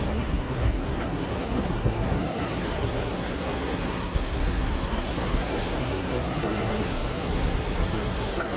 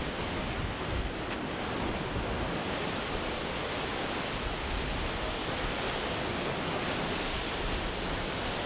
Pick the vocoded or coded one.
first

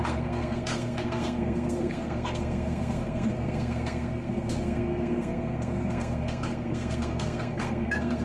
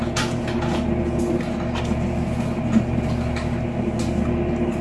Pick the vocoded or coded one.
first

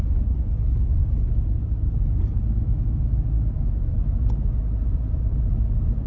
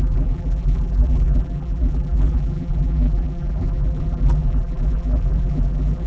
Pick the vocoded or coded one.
second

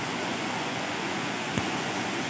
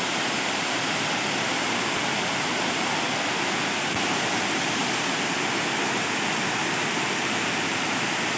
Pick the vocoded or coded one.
first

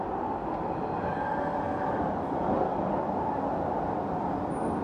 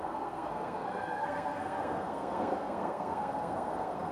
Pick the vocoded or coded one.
second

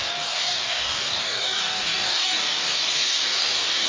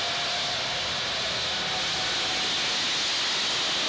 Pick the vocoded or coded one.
first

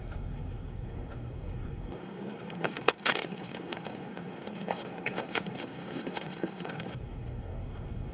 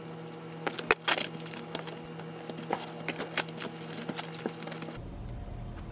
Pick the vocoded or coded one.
first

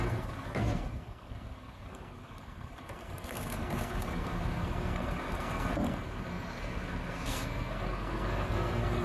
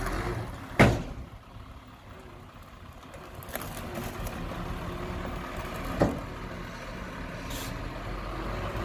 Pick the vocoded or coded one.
first